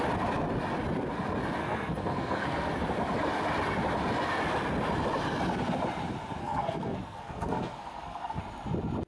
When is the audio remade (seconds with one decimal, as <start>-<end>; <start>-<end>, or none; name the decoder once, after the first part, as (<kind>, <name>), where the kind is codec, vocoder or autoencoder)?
1.6-2.7 (codec, SNAC); 6.4-8.4